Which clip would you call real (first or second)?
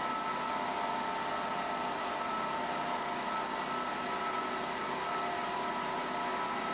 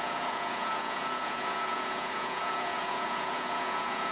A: first